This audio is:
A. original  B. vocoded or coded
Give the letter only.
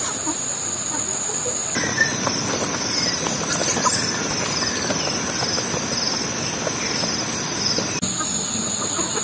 A